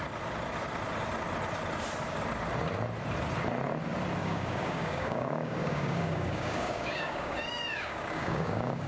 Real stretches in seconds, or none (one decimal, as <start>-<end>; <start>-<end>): 0.0-4.2